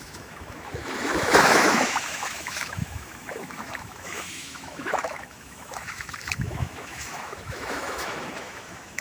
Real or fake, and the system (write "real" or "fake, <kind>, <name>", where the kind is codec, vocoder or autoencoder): fake, autoencoder, DAC-VAE